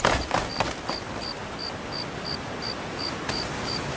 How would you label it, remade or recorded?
recorded